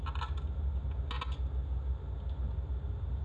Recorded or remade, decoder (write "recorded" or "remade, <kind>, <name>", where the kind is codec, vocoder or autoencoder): recorded